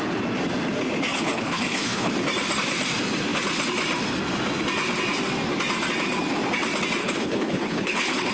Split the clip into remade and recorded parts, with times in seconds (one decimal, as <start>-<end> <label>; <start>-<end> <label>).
0.0-1.1 recorded; 1.1-2.1 remade; 2.1-7.0 recorded; 7.0-8.3 remade